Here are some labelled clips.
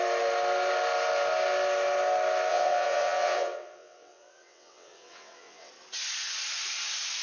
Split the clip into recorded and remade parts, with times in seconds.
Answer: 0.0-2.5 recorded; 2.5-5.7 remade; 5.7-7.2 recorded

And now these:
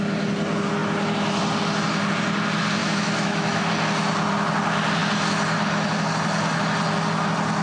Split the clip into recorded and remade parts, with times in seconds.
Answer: 0.0-2.8 recorded; 2.8-3.7 remade; 3.7-7.6 recorded

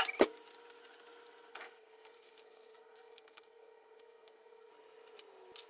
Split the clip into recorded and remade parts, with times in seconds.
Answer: 0.0-1.5 recorded; 1.5-4.7 remade; 4.7-5.7 recorded

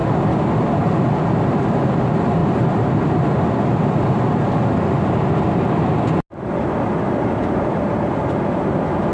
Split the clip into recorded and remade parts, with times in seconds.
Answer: 0.0-9.1 recorded

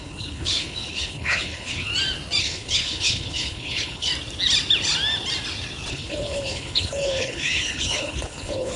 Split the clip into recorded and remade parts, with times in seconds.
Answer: 0.0-1.9 remade; 1.9-2.4 recorded; 2.4-4.1 remade; 4.1-5.9 recorded; 5.9-8.8 remade